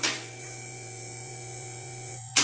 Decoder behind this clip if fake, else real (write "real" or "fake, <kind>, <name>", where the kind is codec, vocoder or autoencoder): fake, vocoder, Vocos